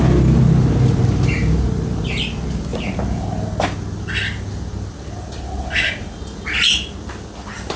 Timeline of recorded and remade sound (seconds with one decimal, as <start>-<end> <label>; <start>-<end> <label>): 0.0-7.8 recorded